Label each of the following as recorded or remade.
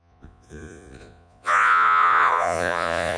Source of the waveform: remade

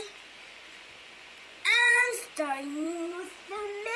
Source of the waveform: remade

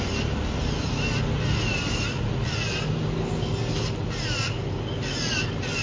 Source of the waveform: recorded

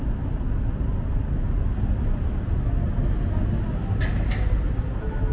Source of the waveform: recorded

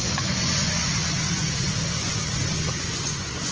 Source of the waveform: remade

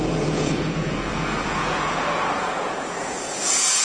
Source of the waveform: remade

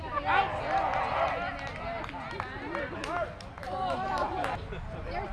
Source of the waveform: recorded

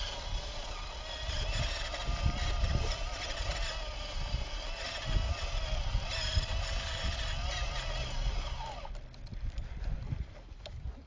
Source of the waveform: recorded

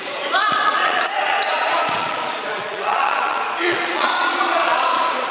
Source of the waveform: remade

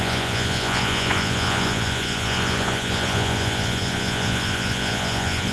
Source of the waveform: remade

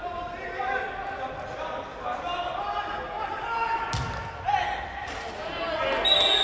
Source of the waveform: recorded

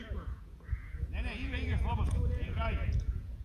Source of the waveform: remade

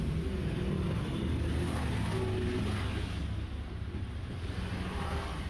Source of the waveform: recorded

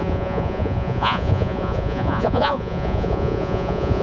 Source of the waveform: remade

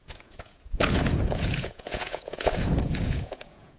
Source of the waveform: remade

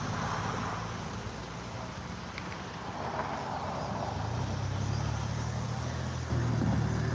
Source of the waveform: recorded